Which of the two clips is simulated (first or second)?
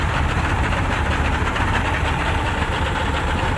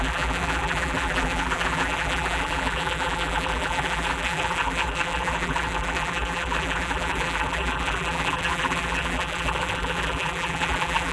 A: second